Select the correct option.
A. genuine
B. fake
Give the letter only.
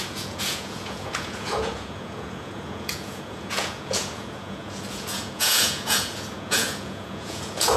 B